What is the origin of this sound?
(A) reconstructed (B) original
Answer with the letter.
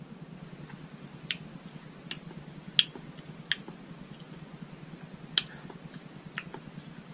B